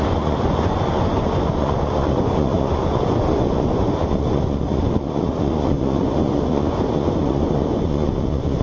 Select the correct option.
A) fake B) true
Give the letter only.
A